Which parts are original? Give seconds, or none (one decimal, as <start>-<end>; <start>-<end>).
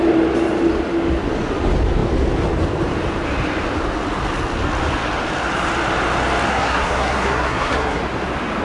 0.0-6.5; 8.0-8.6